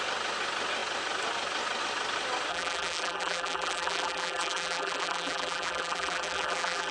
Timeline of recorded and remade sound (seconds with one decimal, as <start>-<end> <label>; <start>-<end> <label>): 0.0-2.5 recorded; 2.5-6.9 remade